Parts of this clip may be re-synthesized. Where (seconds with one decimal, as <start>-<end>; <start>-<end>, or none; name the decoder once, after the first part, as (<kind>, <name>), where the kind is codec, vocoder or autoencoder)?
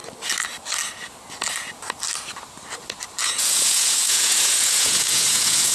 3.2-5.7 (vocoder, Vocos)